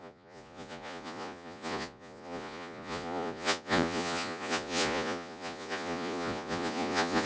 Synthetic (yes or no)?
yes